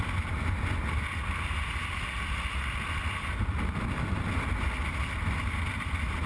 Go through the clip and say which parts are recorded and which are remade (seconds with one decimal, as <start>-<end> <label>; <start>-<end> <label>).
0.0-3.0 recorded; 3.0-5.6 remade; 5.6-6.3 recorded